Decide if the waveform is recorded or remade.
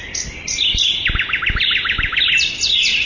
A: recorded